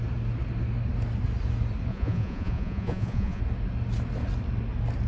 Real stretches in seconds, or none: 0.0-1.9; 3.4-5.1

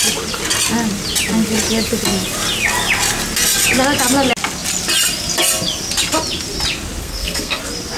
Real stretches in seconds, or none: 0.0-7.0; 7.6-8.0

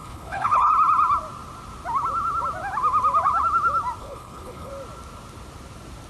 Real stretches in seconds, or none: 0.7-4.0; 4.7-6.1

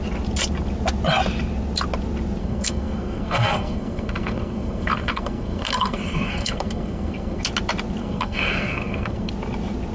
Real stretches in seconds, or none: 0.0-2.4; 7.4-8.0; 9.3-9.9

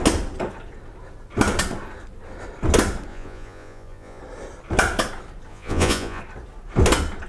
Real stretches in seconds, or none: 0.0-3.1; 4.2-5.5; 6.2-7.3